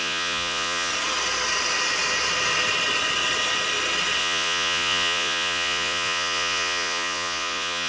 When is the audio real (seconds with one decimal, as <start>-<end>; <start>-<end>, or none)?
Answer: 0.9-4.2